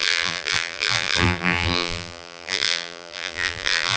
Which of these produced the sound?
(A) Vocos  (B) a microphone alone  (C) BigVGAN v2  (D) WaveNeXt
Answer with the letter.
C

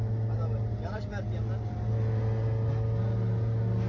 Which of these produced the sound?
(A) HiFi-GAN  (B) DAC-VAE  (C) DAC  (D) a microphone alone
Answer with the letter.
D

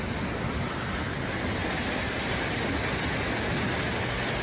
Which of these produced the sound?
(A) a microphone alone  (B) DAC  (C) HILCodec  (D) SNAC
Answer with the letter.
A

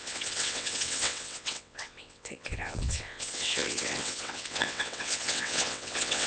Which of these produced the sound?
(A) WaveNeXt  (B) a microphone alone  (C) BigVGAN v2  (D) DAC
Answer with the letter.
A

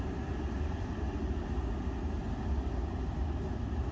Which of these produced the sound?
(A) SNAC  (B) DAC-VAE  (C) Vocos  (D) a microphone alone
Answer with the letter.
D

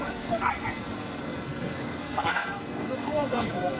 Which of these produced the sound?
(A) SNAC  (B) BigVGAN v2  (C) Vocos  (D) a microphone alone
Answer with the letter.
A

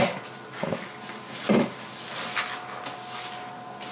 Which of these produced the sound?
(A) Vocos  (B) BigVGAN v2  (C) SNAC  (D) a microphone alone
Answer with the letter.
D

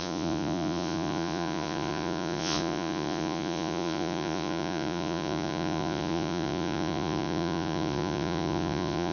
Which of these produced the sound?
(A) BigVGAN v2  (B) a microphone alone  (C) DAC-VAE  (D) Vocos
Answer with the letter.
D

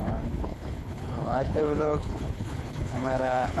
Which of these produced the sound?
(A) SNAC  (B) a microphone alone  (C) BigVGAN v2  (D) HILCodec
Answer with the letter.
D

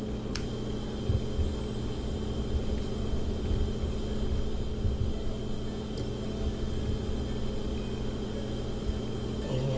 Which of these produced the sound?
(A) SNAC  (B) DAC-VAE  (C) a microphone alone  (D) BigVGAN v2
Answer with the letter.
C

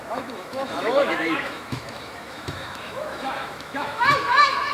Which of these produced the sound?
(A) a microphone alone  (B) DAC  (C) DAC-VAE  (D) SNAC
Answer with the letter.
C